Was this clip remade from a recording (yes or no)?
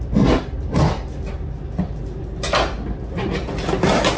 no